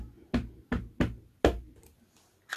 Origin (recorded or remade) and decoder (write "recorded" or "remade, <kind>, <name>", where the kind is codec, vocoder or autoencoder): recorded